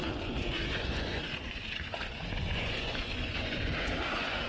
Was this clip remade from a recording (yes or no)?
yes